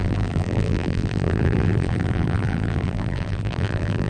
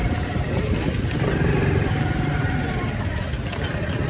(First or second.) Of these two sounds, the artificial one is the first